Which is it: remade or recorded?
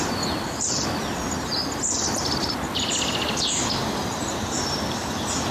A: recorded